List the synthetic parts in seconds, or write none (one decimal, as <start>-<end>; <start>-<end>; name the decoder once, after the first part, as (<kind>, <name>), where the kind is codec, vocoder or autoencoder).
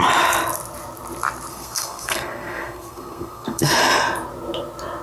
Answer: 1.5-3.8 (codec, SNAC)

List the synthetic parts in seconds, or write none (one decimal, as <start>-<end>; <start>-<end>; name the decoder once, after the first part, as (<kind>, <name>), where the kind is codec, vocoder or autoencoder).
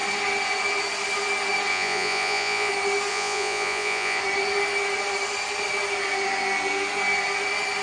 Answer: 1.7-2.7 (vocoder, Vocos); 3.1-4.2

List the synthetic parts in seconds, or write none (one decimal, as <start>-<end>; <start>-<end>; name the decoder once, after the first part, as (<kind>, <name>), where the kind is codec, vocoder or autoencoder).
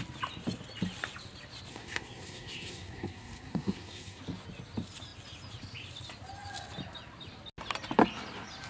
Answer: 1.7-4.2 (codec, SNAC)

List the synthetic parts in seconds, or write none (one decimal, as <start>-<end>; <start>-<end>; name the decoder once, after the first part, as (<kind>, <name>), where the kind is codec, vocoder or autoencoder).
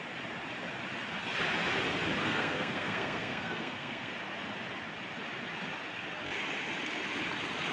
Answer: 2.2-4.1 (codec, SNAC)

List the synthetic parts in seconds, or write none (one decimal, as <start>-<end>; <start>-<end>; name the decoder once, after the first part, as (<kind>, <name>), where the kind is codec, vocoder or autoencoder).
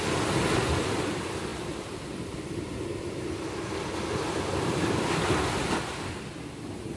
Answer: 1.5-5.7 (vocoder, BigVGAN v2)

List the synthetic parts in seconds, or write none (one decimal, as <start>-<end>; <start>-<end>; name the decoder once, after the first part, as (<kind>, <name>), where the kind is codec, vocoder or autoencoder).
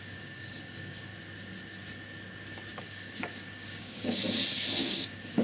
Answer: 0.0-1.1 (codec, DAC); 2.8-4.2; 4.8-5.4